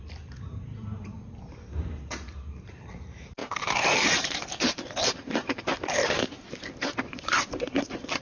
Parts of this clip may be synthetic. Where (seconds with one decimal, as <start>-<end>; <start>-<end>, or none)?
0.0-8.2